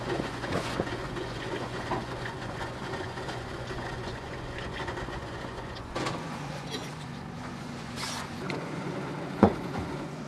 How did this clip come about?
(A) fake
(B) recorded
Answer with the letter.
A